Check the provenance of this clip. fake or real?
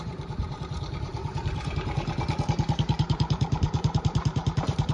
fake